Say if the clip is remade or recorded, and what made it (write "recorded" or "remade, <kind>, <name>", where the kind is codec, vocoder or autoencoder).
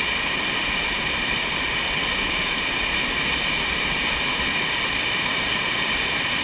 recorded